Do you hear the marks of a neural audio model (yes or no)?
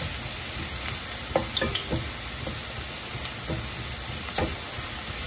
no